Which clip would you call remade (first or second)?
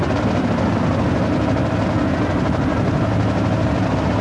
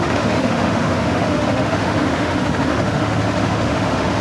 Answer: second